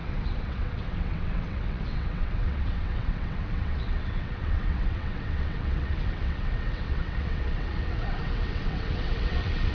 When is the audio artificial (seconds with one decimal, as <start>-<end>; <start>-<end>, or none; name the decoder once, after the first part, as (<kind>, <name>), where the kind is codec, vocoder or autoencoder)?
0.0-9.7 (vocoder, WaveNeXt)

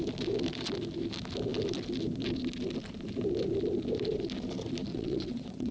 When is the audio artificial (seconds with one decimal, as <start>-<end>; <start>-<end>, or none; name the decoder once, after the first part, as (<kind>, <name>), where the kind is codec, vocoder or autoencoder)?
4.9-5.7 (vocoder, WaveNeXt)

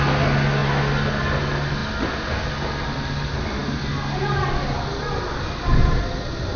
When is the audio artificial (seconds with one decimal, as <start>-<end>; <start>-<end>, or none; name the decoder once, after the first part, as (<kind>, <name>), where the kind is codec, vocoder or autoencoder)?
none

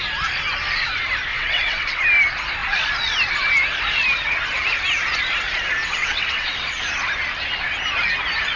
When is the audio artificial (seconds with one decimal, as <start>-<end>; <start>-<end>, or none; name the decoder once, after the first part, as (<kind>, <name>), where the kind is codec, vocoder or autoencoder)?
1.3-2.0 (vocoder, WaveNeXt); 5.8-6.8

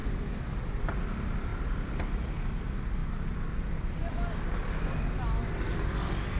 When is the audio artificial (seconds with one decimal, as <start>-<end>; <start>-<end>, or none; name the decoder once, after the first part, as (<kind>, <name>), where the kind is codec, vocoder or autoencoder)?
none

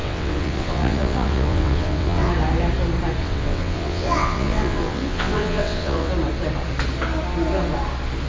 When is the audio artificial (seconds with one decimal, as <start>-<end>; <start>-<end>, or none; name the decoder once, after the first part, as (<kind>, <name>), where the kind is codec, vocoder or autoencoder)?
0.0-2.3 (vocoder, WaveNeXt); 3.2-6.1

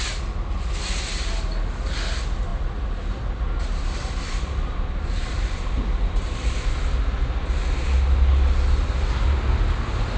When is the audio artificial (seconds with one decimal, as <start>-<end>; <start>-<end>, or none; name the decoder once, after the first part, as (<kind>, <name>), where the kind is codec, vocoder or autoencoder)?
none

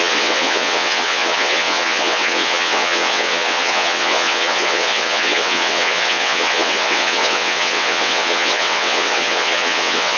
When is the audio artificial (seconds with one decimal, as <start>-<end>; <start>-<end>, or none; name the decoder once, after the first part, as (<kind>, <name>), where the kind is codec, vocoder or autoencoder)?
0.0-10.2 (vocoder, WaveNeXt)